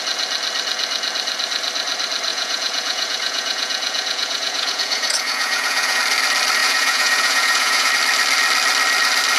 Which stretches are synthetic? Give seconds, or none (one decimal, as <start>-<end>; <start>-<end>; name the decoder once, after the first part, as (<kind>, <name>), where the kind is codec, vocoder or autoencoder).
2.3-6.0 (vocoder, Vocos); 6.6-7.9